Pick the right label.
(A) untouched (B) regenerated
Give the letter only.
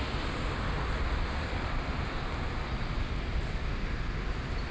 A